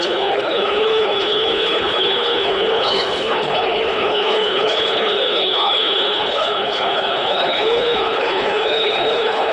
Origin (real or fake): fake